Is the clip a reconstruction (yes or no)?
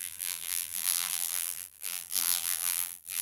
yes